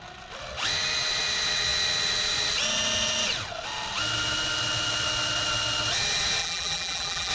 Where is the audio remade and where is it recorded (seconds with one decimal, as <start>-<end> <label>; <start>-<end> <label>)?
0.0-6.4 recorded; 6.4-7.3 remade